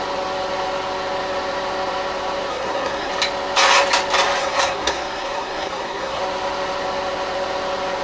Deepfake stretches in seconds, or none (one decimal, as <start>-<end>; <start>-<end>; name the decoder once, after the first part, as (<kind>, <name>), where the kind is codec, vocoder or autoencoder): 2.5-3.1 (codec, SNAC); 4.4-6.2